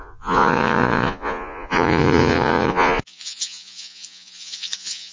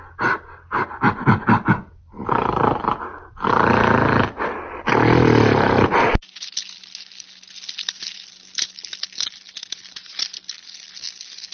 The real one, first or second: second